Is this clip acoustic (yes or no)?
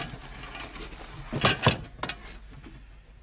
yes